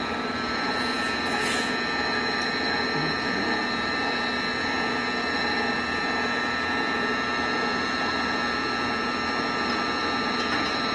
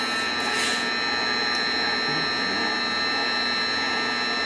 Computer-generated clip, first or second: first